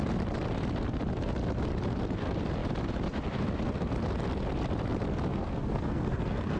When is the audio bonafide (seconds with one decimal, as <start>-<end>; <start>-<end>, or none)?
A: 0.0-5.3